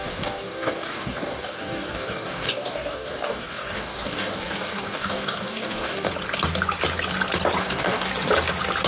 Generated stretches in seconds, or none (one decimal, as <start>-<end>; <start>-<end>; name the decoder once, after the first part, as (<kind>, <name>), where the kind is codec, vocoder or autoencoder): 0.0-6.1 (codec, DAC); 7.6-8.1